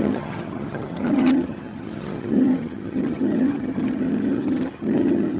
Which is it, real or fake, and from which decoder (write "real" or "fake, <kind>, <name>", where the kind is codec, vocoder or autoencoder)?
fake, vocoder, HiFi-GAN